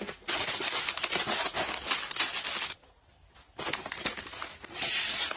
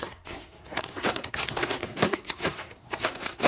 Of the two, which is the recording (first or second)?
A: first